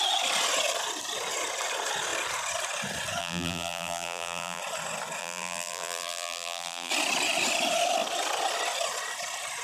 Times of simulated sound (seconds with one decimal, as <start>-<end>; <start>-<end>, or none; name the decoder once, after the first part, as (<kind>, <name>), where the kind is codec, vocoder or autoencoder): 3.2-4.6 (vocoder, BigVGAN v2); 5.2-6.9